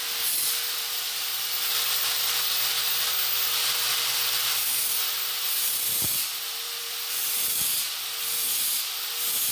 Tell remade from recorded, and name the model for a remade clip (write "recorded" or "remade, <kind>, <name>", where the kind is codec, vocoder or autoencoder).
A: remade, vocoder, BigVGAN v2